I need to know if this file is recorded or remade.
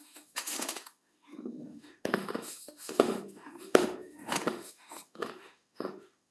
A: remade